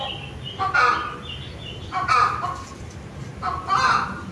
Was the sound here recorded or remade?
recorded